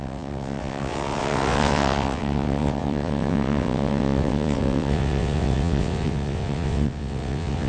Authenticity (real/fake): fake